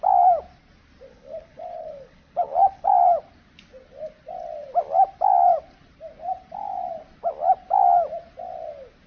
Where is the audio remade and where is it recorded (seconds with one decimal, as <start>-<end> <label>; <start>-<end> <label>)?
0.0-1.1 recorded; 1.1-2.9 remade; 2.9-9.1 recorded